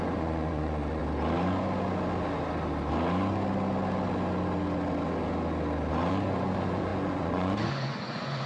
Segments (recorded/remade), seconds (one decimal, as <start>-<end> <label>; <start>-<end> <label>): 0.0-1.0 remade; 1.0-6.1 recorded; 6.1-8.5 remade